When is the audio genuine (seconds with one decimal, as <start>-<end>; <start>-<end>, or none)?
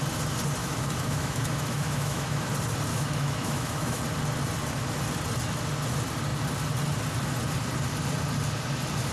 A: 0.0-0.6; 2.5-2.9; 4.0-9.1